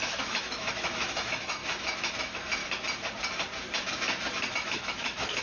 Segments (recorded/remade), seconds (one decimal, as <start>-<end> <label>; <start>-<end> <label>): 0.0-1.6 remade; 1.6-2.2 recorded; 2.2-2.6 remade; 2.6-4.5 recorded; 4.5-5.4 remade